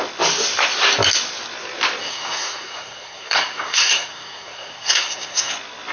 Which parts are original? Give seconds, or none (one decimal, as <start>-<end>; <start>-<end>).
0.0-2.0; 5.5-5.9